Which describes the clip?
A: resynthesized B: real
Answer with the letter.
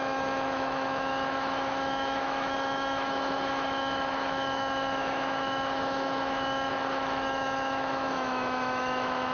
A